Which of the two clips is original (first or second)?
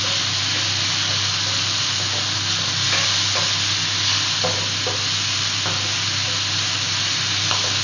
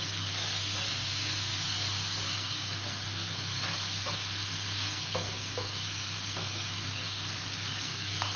first